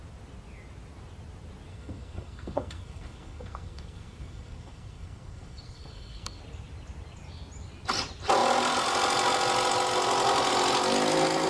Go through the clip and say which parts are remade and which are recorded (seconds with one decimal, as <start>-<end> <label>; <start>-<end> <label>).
0.0-1.7 recorded; 1.7-6.4 remade; 6.4-11.5 recorded